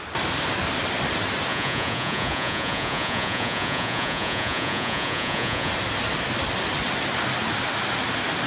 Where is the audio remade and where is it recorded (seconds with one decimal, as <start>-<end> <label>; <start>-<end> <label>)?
0.0-1.5 recorded; 1.5-5.7 remade; 5.7-8.5 recorded